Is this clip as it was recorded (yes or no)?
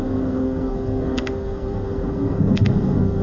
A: no